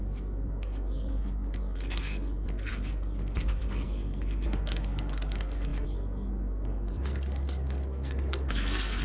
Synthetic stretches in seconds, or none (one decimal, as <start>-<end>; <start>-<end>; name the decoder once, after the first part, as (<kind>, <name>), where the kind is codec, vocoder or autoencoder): 0.0-9.0 (codec, SNAC)

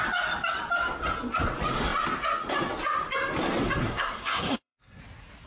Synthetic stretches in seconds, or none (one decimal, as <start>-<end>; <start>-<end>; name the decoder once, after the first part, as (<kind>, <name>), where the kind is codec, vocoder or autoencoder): 3.8-5.0 (codec, SNAC)

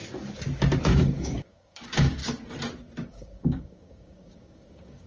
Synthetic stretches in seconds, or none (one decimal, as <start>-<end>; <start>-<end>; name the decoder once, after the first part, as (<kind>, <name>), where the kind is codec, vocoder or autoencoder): 0.8-2.2 (codec, DAC); 3.1-5.1

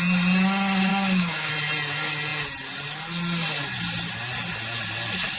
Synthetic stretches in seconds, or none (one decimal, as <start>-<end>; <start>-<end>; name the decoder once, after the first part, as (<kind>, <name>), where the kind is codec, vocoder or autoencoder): 0.9-1.5 (codec, DAC)

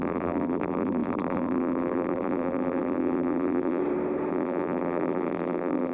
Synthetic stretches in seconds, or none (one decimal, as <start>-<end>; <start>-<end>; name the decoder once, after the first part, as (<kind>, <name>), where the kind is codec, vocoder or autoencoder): 0.0-3.8 (vocoder, BigVGAN v2); 4.3-5.9

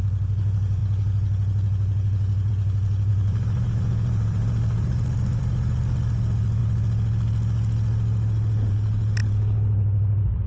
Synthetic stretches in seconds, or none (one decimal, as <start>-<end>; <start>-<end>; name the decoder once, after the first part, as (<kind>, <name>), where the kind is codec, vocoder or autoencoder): 3.1-5.4 (vocoder, BigVGAN v2)